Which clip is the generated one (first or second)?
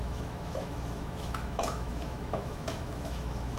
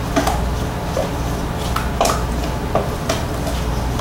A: first